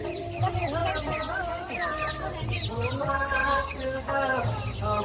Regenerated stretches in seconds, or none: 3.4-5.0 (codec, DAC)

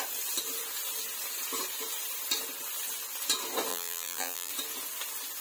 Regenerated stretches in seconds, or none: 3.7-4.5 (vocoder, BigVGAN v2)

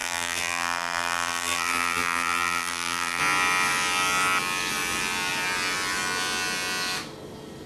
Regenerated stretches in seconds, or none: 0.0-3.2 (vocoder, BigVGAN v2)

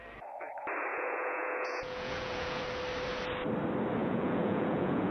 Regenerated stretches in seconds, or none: 0.9-2.6 (vocoder, Vocos); 4.0-5.1

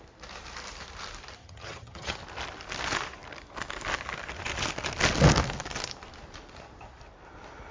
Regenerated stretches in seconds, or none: 1.4-2.2 (vocoder, HiFi-GAN)

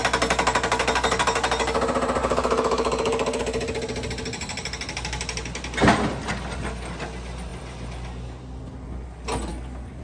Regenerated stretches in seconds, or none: 2.2-3.4 (codec, DAC)